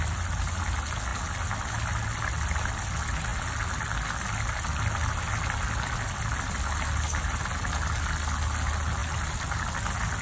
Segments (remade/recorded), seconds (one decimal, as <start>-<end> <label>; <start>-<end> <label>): 0.0-10.2 recorded